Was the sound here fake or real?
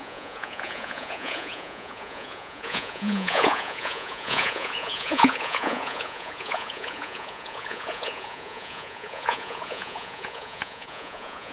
fake